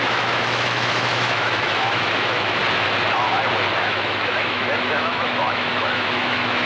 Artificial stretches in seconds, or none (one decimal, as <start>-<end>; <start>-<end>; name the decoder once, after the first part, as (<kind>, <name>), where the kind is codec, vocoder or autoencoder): 0.0-2.6 (autoencoder, DAC-VAE); 3.8-6.7